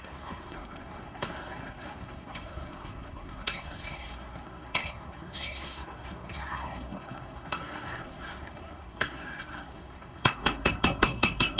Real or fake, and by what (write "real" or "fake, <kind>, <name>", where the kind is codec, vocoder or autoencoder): fake, codec, SNAC